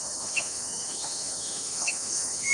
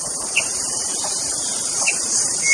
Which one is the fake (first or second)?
first